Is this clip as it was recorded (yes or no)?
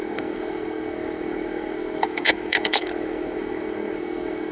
no